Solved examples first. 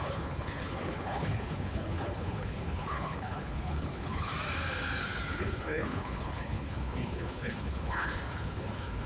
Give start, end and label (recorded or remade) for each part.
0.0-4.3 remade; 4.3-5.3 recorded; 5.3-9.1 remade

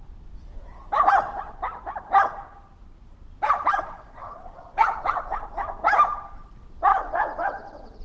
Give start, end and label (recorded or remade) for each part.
0.0-3.7 recorded; 3.7-5.4 remade; 5.4-6.9 recorded; 6.9-8.0 remade

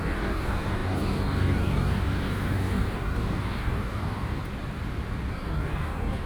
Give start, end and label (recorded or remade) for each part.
0.0-4.4 remade; 4.4-5.3 recorded; 5.3-6.3 remade

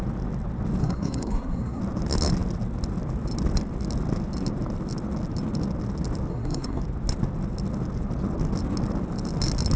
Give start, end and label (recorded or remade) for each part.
0.0-0.8 recorded; 0.8-1.8 remade; 1.8-6.3 recorded; 6.3-6.8 remade; 6.8-9.8 recorded

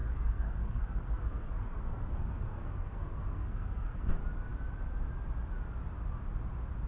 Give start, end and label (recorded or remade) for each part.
0.0-4.1 remade; 4.1-6.9 recorded

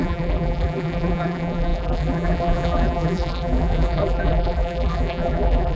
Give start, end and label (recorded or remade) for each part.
0.0-5.8 remade

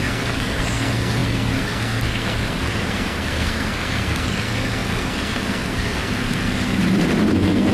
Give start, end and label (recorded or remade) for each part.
0.0-6.8 remade; 6.8-7.3 recorded; 7.3-7.7 remade